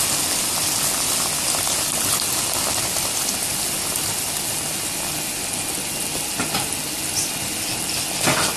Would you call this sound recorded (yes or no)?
yes